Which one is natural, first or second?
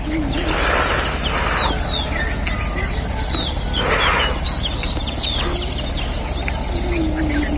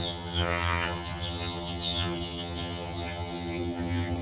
first